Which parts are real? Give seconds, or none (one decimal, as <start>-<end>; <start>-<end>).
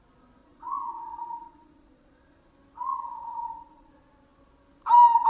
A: 0.0-0.4; 2.5-2.9; 3.9-5.3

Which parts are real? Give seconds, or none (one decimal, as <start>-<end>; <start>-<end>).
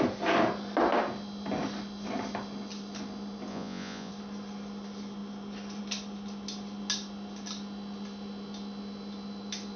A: 0.0-3.5; 4.1-9.8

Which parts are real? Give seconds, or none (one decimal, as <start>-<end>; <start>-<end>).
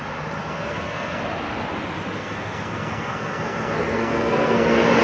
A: 0.0-0.4; 1.2-2.2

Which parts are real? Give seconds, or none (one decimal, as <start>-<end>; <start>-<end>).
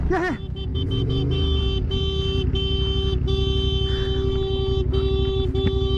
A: 0.0-0.7; 1.6-6.0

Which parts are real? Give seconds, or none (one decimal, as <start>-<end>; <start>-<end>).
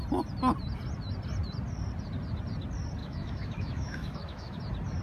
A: 0.0-3.0; 4.6-5.0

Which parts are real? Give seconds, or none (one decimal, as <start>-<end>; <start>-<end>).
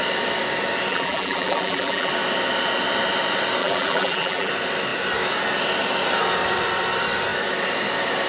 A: 0.0-0.9; 2.1-3.6; 4.5-8.3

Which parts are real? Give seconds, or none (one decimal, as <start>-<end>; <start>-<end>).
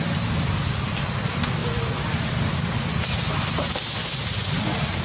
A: 0.0-5.0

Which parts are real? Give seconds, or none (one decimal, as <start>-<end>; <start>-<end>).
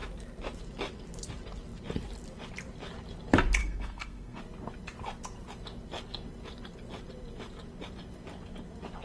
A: 0.0-3.6; 4.4-9.0